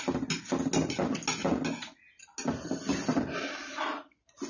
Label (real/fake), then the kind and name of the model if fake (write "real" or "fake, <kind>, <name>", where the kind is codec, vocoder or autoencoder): real